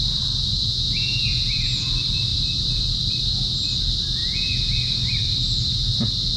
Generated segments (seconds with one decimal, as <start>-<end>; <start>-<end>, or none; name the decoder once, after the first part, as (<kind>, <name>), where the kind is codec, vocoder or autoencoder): 0.6-1.9 (vocoder, Vocos); 4.2-5.1